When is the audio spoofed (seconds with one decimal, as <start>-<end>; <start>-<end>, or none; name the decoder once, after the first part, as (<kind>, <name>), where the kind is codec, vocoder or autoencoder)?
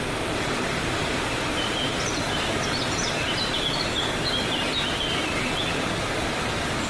none